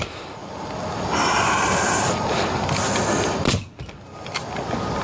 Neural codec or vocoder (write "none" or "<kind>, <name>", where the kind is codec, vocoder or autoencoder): none